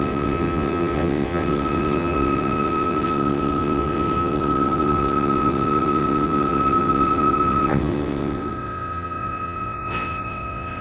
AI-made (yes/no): yes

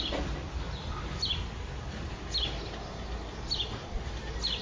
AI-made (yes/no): no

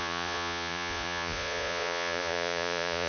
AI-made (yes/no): yes